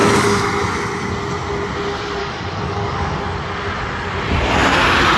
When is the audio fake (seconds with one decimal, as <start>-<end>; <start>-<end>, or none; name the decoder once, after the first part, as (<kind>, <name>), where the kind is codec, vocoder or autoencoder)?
0.0-0.5 (codec, DAC); 2.2-3.2